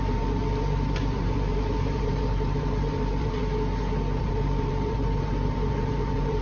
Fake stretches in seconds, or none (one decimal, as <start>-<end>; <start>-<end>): 0.0-3.4; 4.2-6.4